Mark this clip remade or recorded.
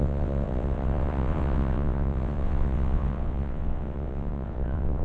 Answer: remade